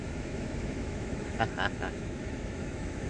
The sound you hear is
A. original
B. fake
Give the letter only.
B